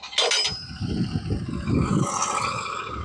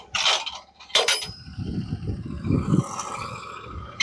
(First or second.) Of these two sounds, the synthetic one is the second